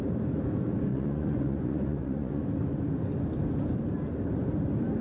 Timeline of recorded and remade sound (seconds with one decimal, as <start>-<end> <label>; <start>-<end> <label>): 0.0-0.9 recorded; 0.9-2.4 remade; 2.4-5.0 recorded